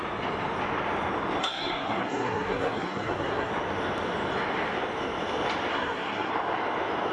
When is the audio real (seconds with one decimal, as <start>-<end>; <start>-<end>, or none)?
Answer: 0.0-1.4; 3.5-5.7; 6.3-7.1